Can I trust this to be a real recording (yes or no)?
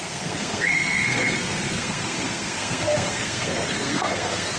no